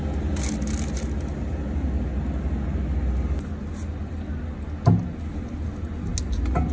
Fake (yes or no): no